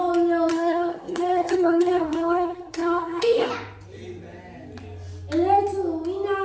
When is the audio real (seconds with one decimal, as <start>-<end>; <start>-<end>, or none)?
0.0-0.5; 3.5-6.4